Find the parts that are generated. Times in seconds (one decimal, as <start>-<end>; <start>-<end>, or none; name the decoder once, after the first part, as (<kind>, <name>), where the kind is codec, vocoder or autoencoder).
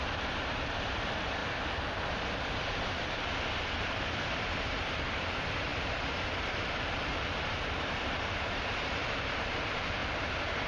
0.0-1.4 (vocoder, BigVGAN v2); 2.1-10.0